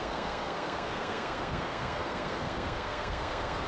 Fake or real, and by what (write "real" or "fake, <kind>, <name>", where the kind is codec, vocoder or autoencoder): fake, codec, SNAC